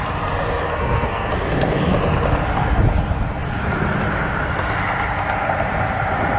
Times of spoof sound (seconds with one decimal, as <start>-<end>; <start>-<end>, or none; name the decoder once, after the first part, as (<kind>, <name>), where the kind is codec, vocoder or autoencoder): 0.7-1.3 (codec, SNAC)